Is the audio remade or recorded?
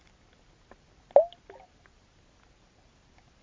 recorded